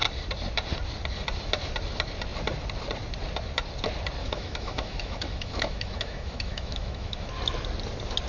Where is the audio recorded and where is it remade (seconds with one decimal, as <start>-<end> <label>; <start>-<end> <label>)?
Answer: 0.0-4.2 recorded; 4.2-7.3 remade; 7.3-8.3 recorded

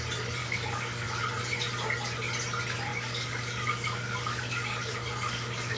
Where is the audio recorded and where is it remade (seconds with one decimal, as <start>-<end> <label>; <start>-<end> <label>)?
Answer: 0.0-0.4 recorded; 0.4-1.2 remade; 1.2-2.9 recorded; 2.9-5.8 remade